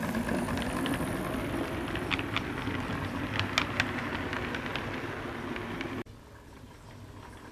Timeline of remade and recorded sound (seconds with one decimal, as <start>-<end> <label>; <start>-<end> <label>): 0.0-4.7 recorded; 4.7-7.5 remade